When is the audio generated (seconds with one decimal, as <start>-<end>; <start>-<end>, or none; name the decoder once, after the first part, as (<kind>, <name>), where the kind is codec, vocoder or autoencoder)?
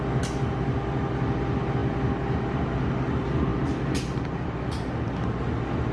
none